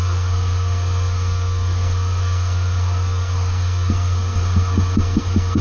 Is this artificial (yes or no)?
yes